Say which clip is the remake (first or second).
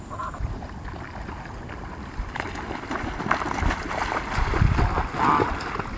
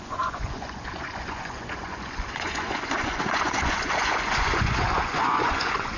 second